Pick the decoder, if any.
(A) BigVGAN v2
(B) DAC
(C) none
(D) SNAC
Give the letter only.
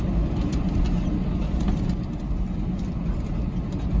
C